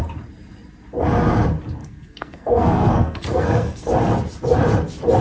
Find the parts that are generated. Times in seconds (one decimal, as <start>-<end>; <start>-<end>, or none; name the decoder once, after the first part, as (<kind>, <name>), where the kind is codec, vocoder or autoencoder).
1.8-3.9 (codec, SNAC)